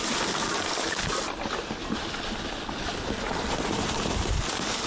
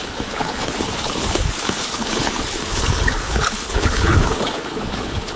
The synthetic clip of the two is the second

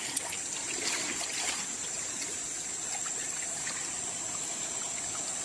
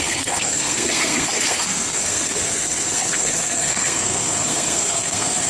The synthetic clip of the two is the second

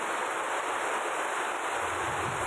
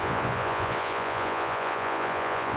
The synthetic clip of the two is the second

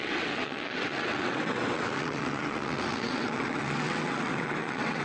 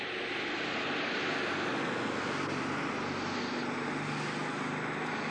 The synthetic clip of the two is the first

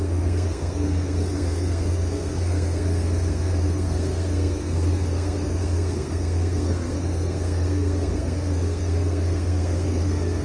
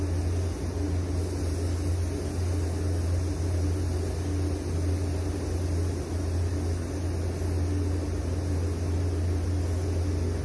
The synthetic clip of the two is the first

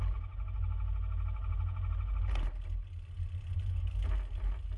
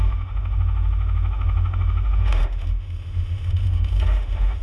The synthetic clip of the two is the second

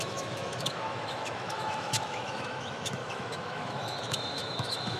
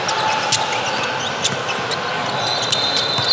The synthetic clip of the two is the first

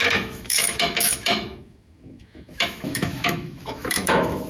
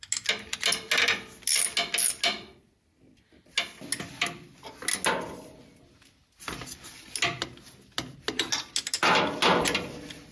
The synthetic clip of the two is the first